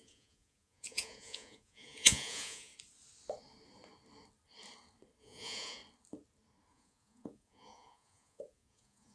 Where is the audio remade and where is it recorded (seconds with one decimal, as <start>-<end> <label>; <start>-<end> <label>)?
0.0-2.7 remade; 2.7-5.2 recorded; 5.2-5.8 remade; 5.8-6.7 recorded; 6.7-9.1 remade